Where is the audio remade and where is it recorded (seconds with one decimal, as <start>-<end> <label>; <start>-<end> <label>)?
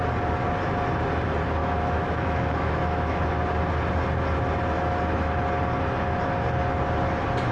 0.0-1.6 recorded; 1.6-3.3 remade; 3.3-7.5 recorded